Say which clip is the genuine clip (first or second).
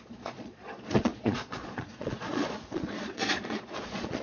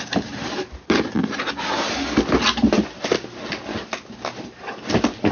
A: second